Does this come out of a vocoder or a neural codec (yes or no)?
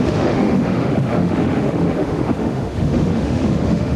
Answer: yes